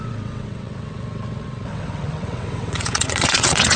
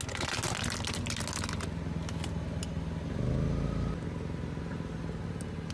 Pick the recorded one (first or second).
second